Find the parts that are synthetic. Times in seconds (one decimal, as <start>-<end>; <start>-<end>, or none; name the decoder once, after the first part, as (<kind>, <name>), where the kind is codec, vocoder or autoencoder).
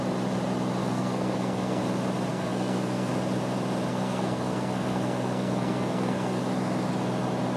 0.8-1.8 (codec, SNAC); 2.3-3.1; 3.9-6.4